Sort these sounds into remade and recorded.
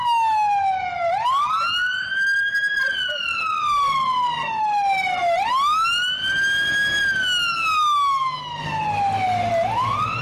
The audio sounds recorded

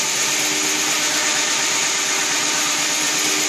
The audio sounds recorded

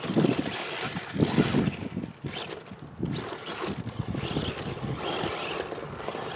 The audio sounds recorded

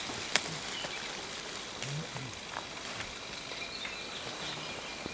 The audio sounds recorded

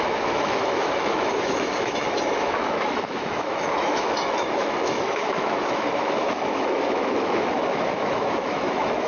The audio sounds remade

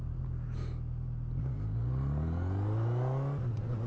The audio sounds recorded